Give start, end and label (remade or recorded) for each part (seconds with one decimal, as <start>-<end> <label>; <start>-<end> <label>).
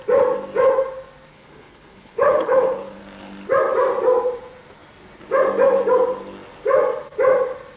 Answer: 0.0-1.3 recorded; 1.3-3.0 remade; 3.0-7.8 recorded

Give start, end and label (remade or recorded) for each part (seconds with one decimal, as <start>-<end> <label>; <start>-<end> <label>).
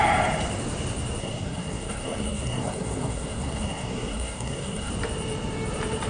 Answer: 0.0-1.2 recorded; 1.2-4.9 remade; 4.9-6.1 recorded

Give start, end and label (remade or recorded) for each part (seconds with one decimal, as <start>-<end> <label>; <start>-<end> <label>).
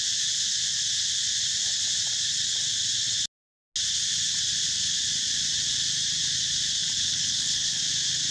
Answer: 0.0-6.8 recorded; 6.8-7.8 remade; 7.8-8.3 recorded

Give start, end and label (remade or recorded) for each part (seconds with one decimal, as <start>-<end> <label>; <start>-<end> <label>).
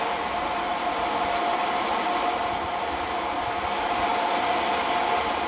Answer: 0.0-5.5 recorded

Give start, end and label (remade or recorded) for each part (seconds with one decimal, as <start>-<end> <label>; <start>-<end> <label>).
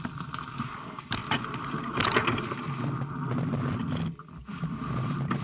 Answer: 0.0-5.4 recorded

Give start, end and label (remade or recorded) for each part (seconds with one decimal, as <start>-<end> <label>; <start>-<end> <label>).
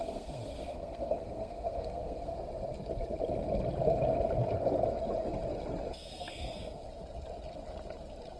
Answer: 0.0-2.3 remade; 2.3-5.9 recorded; 5.9-6.8 remade; 6.8-8.4 recorded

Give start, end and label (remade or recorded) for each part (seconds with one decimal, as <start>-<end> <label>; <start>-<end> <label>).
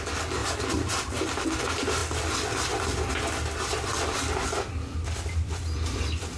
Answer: 0.0-6.4 recorded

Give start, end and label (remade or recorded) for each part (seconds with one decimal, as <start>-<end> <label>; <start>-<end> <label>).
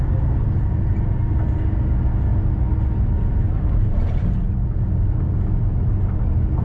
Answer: 0.0-6.6 recorded